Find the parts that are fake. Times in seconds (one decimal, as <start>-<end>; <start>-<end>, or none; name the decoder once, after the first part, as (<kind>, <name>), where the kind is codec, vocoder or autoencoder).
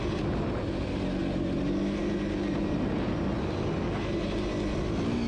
none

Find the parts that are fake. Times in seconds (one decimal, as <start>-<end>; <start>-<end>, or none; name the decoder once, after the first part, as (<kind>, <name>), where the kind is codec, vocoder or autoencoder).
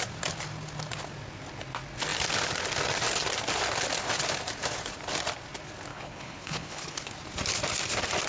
5.9-7.1 (codec, HILCodec)